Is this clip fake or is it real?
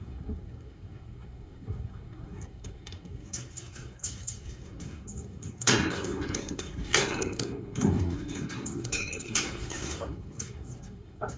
fake